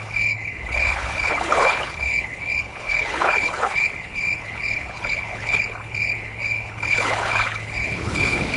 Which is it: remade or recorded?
remade